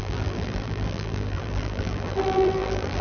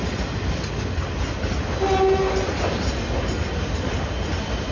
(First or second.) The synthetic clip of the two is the first